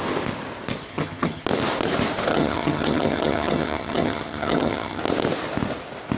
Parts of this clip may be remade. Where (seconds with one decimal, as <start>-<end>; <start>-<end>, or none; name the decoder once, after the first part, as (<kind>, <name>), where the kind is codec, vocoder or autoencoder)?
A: 0.9-1.4 (vocoder, HiFi-GAN); 2.3-5.0